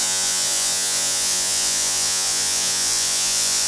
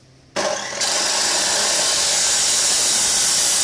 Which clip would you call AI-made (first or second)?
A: first